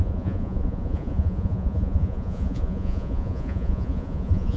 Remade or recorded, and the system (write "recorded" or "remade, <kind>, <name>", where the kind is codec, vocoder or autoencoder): remade, vocoder, Vocos